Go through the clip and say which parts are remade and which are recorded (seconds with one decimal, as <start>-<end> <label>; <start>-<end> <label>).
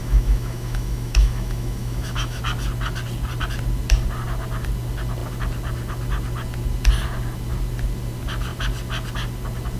0.0-2.4 remade; 2.4-9.8 recorded